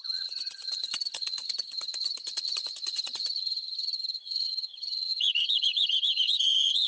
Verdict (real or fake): fake